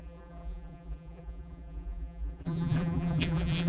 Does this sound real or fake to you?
fake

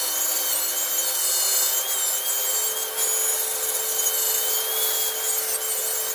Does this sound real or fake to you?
real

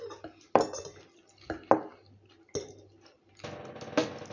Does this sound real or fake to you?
real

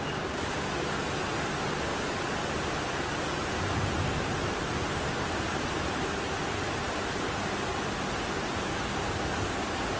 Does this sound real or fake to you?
real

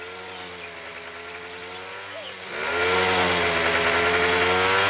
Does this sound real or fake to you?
real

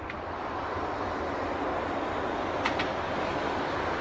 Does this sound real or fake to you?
real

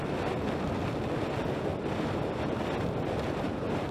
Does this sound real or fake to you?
real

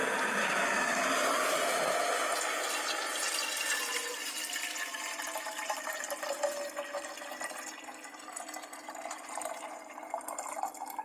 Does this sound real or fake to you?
real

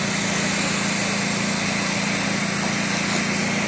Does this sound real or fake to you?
real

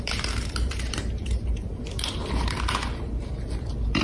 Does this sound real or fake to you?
fake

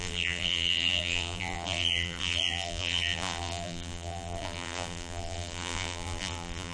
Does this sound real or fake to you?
fake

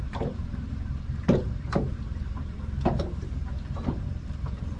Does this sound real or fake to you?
fake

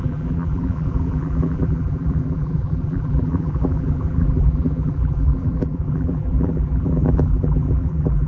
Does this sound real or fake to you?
fake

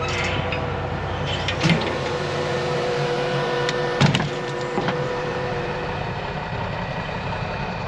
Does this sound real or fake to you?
fake